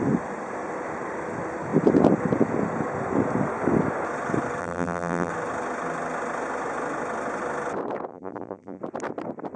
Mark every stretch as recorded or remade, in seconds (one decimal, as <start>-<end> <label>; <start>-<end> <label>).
0.0-4.6 recorded; 4.6-5.3 remade; 5.3-8.1 recorded; 8.1-8.8 remade; 8.8-9.6 recorded